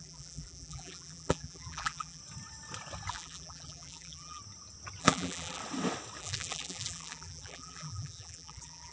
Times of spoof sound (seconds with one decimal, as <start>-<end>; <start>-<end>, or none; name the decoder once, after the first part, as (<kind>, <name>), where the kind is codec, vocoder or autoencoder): 0.0-2.2 (vocoder, BigVGAN v2); 3.1-4.4; 5.0-5.6; 6.2-8.9